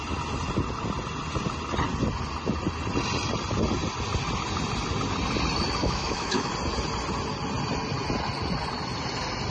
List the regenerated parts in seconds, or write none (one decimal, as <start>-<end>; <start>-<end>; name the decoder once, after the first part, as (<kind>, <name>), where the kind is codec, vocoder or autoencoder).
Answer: 5.8-6.5 (autoencoder, DAC-VAE)